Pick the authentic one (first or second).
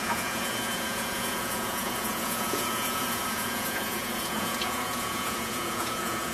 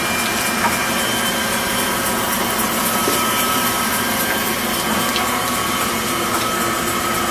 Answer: second